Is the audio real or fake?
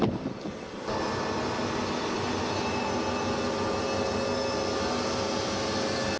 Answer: real